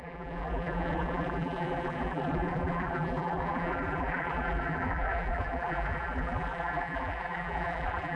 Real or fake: fake